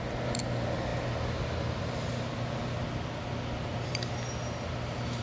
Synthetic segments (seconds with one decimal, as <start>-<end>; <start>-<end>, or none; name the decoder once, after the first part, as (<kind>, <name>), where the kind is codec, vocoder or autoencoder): none